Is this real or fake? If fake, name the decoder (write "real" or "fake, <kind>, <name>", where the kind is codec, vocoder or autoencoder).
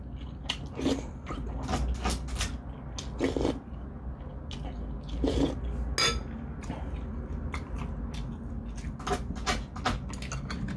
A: real